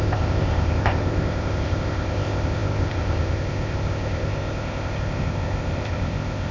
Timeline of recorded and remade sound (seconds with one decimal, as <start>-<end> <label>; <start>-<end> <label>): 0.0-6.5 remade